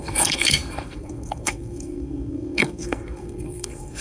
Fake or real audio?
fake